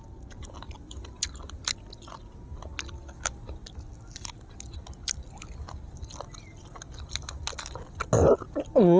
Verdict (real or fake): real